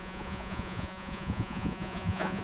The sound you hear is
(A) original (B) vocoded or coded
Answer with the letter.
B